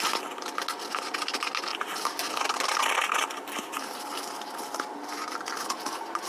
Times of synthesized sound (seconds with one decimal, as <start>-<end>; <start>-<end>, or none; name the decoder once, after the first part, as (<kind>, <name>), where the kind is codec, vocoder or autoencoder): none